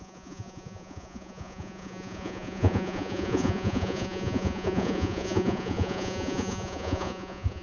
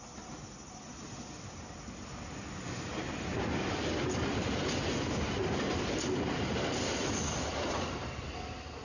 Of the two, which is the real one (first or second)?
second